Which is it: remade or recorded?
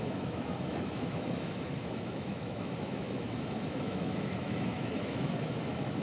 remade